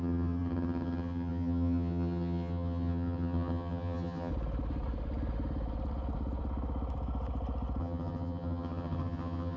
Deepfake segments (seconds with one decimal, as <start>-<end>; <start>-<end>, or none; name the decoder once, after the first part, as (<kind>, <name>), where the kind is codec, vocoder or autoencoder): 0.0-4.3 (vocoder, HiFi-GAN); 7.8-9.6